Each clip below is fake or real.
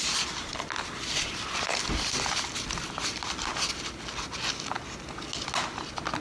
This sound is real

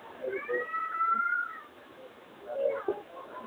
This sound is fake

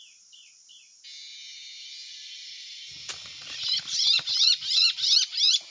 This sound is real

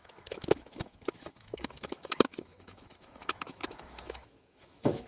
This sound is fake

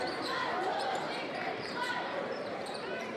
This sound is fake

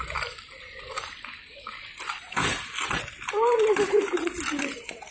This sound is fake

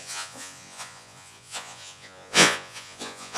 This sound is fake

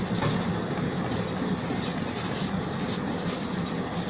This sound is real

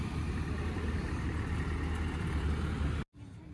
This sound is real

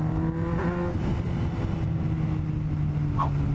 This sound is real